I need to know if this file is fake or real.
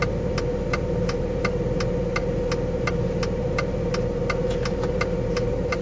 real